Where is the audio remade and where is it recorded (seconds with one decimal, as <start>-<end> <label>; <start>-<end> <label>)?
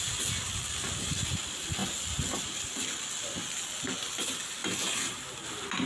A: 0.0-5.9 recorded